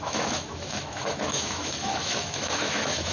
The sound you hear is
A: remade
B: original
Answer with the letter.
A